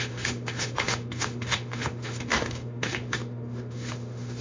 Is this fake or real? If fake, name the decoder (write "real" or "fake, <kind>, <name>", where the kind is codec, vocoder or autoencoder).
fake, autoencoder, DAC-VAE